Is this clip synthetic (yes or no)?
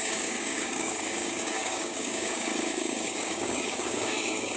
yes